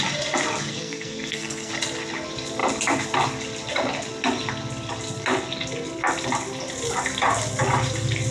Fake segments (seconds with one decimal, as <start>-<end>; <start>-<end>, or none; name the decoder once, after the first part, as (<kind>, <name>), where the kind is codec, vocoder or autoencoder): 0.7-1.7 (codec, SNAC)